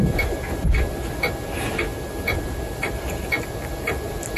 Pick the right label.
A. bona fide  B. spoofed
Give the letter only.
A